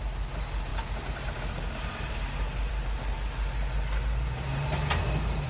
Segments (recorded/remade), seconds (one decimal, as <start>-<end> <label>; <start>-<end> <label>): 0.0-5.5 recorded